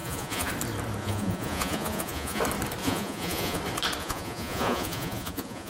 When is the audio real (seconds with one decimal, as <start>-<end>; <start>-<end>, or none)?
0.5-1.0; 2.4-2.8; 3.6-4.0